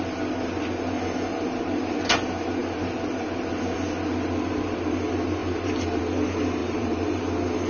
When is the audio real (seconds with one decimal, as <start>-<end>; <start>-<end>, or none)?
0.0-5.4; 6.0-6.6; 7.2-7.7